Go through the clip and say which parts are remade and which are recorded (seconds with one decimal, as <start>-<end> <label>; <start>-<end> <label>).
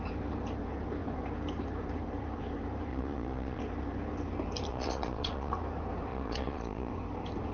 0.0-2.9 recorded; 2.9-3.6 remade; 3.6-4.7 recorded; 4.7-5.5 remade; 5.5-6.1 recorded; 6.1-6.9 remade; 6.9-7.5 recorded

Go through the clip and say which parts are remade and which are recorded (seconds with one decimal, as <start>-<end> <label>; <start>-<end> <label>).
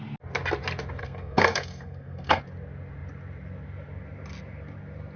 0.0-1.0 recorded; 1.0-2.4 remade; 2.4-5.2 recorded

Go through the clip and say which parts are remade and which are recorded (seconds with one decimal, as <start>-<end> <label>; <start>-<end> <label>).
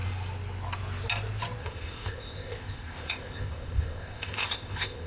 0.0-1.6 recorded; 1.6-5.1 remade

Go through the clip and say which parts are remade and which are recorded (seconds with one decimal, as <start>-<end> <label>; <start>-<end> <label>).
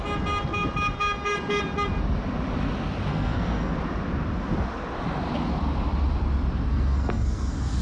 0.0-3.1 recorded; 3.1-3.7 remade; 3.7-6.7 recorded; 6.7-7.8 remade